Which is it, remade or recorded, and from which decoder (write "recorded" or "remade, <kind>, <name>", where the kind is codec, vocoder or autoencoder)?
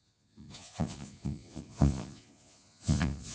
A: remade, vocoder, Vocos